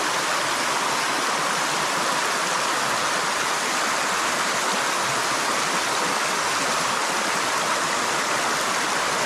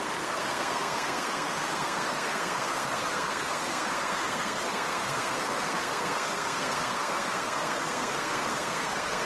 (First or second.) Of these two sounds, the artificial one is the second